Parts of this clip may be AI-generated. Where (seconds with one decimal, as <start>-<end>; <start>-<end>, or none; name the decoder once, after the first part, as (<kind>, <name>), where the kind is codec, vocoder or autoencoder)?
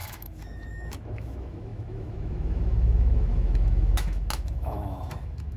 0.0-5.6 (autoencoder, DAC-VAE)